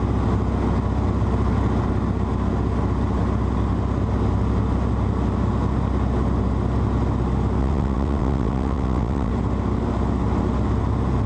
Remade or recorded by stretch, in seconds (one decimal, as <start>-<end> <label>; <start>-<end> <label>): 0.0-7.6 recorded; 7.6-9.3 remade; 9.3-11.3 recorded